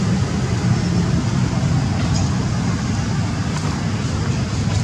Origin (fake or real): real